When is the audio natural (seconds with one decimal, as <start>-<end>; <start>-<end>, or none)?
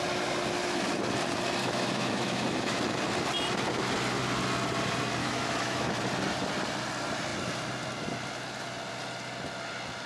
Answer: 0.0-1.6; 2.8-5.2; 5.9-10.1